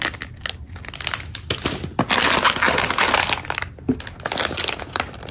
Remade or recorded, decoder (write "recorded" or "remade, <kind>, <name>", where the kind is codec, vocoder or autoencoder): recorded